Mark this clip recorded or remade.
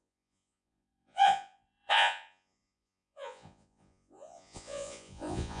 remade